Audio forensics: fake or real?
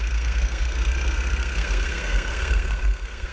fake